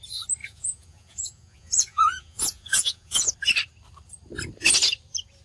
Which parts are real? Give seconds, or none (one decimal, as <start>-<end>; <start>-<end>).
0.0-0.4; 3.3-5.4